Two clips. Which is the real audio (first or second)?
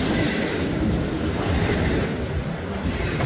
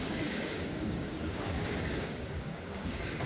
first